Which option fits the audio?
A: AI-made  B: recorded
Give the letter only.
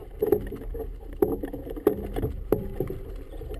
B